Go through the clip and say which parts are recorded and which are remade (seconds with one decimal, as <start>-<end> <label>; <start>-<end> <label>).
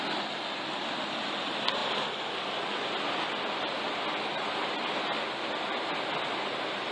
0.0-6.9 recorded